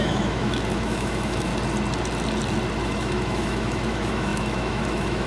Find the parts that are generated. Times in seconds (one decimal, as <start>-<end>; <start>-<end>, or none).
0.0-1.5; 2.8-5.3